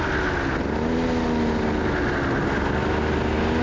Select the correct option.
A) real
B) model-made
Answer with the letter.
A